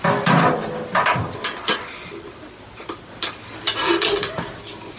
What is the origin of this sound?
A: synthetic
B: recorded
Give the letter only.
B